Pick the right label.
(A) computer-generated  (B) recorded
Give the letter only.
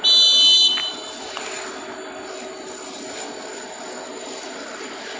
B